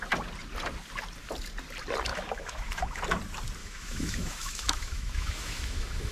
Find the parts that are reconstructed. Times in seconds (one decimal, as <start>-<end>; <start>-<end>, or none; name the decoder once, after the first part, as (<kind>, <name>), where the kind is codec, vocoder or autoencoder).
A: 2.1-3.0 (autoencoder, DAC-VAE); 3.6-6.1